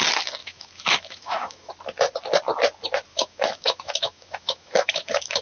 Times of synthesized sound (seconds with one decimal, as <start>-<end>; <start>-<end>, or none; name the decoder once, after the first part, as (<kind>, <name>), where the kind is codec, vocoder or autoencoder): 0.4-1.7 (autoencoder, DAC-VAE); 3.1-5.4